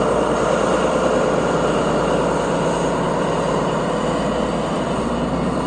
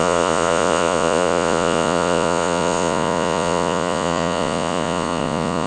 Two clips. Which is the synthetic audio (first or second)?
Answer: second